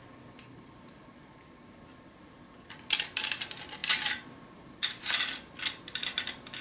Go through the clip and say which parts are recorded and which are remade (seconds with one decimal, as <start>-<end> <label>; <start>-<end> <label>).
0.0-6.6 recorded